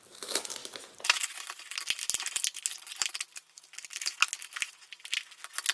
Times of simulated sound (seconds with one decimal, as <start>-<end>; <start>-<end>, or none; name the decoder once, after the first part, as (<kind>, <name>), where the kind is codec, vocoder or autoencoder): none